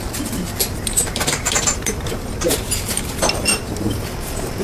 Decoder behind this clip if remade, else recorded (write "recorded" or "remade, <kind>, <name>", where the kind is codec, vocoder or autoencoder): remade, vocoder, BigVGAN v2